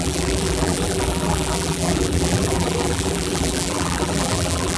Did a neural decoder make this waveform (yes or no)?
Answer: yes